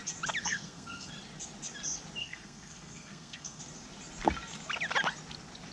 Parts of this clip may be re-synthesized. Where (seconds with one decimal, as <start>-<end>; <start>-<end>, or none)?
0.4-1.1; 2.2-3.6